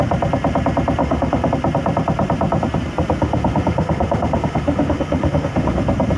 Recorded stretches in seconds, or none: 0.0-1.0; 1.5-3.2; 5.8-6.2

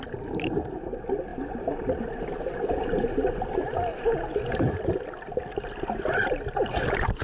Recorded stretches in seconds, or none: 0.0-7.2

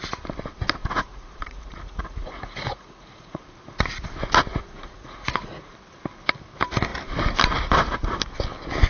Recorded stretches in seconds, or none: 0.0-0.8; 3.4-4.5; 5.7-8.9

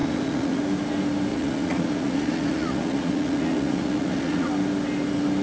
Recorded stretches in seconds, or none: 0.6-1.3; 4.5-5.4

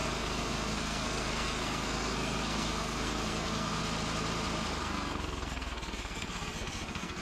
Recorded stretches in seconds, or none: 3.8-4.8

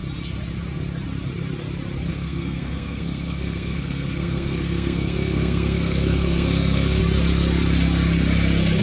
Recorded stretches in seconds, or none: 0.0-2.1; 7.0-8.8

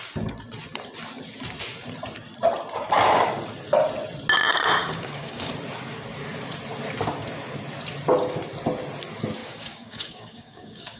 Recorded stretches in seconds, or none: 0.0-4.8; 5.5-9.4

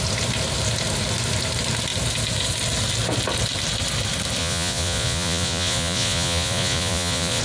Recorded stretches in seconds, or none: 0.0-4.4